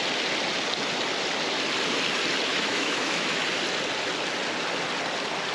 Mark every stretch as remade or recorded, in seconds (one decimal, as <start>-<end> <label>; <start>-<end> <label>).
0.0-2.5 recorded; 2.5-3.4 remade; 3.4-5.5 recorded